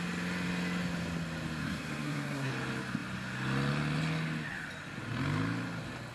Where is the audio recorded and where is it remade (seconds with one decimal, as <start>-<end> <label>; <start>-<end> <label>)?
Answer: 0.0-1.6 recorded; 1.6-2.5 remade; 2.5-6.1 recorded